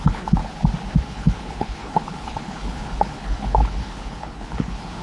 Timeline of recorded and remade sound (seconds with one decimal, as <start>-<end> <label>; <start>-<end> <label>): 0.0-0.4 remade; 0.4-1.0 recorded; 1.0-5.0 remade